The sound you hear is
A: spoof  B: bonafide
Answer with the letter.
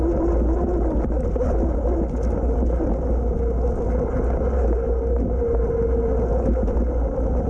B